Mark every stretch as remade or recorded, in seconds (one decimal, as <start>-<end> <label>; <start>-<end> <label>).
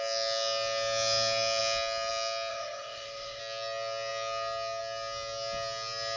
0.0-2.5 recorded; 2.5-3.4 remade; 3.4-6.2 recorded